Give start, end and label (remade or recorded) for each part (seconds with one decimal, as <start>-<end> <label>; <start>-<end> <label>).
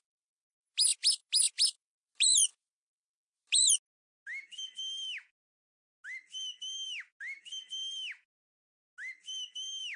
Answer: 0.0-10.0 recorded